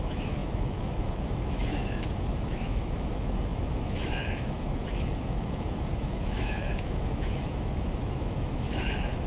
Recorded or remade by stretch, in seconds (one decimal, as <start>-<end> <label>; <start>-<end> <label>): 0.0-9.3 remade